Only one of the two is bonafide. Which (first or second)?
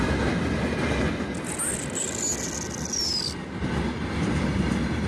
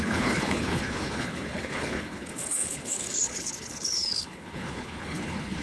first